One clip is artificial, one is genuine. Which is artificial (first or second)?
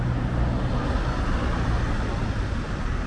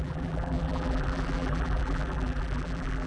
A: second